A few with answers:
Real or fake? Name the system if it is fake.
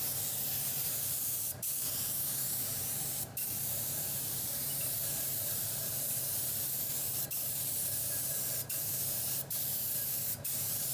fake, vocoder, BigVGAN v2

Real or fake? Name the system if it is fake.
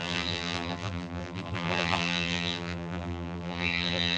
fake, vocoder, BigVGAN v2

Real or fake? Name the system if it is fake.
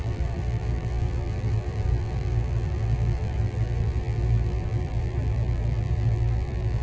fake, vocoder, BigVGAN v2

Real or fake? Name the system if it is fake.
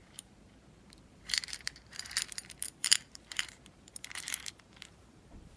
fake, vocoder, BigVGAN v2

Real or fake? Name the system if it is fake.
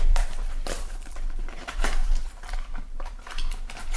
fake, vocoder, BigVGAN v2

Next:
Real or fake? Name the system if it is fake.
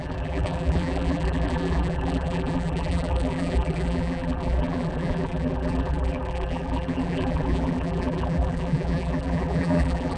fake, vocoder, BigVGAN v2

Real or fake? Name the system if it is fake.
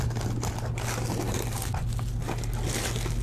real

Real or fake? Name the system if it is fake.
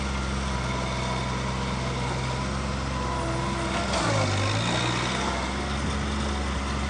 real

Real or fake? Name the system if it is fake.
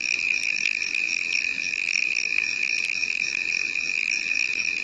fake, vocoder, BigVGAN v2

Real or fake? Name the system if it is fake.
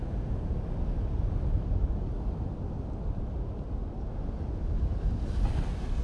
real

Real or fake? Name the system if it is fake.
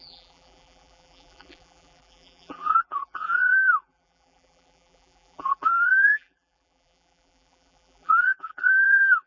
fake, vocoder, BigVGAN v2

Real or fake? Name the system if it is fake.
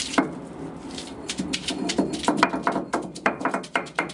fake, vocoder, BigVGAN v2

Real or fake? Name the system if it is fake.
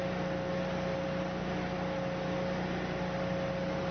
real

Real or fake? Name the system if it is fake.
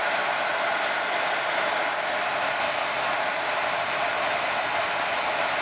real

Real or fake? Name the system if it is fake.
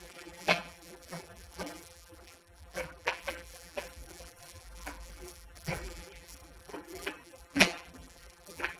fake, vocoder, BigVGAN v2